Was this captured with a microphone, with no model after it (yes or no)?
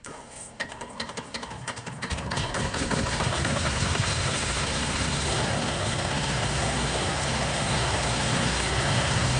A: no